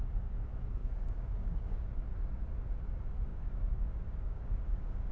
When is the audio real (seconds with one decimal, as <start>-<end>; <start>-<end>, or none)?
0.0-0.8; 2.1-3.3